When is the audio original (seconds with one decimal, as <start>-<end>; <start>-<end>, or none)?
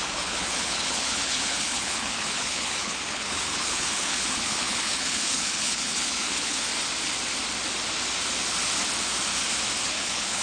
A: 6.7-9.9